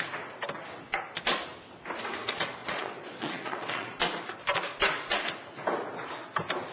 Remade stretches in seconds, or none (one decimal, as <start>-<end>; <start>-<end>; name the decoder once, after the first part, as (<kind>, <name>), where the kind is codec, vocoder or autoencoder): 2.6-3.9 (vocoder, Vocos)

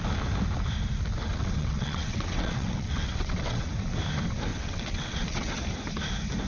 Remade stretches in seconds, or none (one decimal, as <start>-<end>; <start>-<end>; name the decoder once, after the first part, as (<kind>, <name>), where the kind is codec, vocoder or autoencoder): 1.3-3.7 (vocoder, WaveNeXt); 4.5-5.6